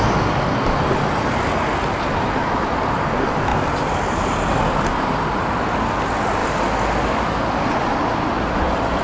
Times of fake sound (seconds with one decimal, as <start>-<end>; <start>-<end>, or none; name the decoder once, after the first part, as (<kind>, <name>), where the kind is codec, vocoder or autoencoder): none

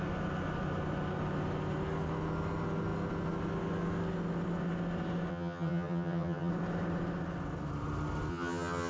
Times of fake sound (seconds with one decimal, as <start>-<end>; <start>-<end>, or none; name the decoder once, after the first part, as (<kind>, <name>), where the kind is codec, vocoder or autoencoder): 5.3-6.5 (vocoder, HiFi-GAN); 8.3-8.9

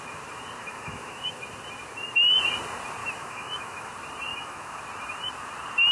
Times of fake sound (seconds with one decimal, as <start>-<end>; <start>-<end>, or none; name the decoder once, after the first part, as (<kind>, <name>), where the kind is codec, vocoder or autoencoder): 0.6-1.2 (autoencoder, DAC-VAE); 3.0-3.9; 4.3-4.8